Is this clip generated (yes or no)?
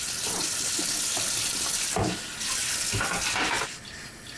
no